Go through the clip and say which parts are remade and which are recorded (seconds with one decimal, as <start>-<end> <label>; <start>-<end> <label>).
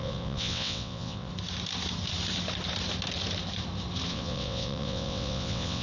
0.0-1.3 remade; 1.3-4.1 recorded; 4.1-5.8 remade